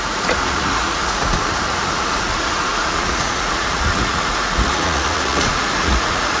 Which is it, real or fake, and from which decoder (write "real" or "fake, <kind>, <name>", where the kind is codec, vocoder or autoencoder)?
fake, vocoder, Vocos